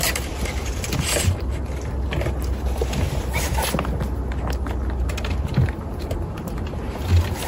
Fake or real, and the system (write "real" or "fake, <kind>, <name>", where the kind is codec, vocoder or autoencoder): real